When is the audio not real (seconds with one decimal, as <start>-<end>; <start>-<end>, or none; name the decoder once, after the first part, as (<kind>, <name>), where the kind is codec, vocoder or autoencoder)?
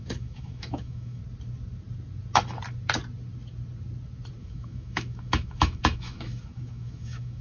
0.0-1.2 (autoencoder, DAC-VAE); 4.4-7.4